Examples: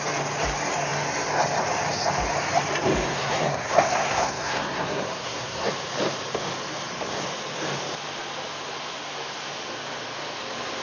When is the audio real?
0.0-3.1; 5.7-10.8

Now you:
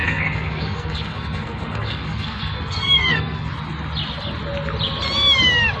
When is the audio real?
3.5-5.8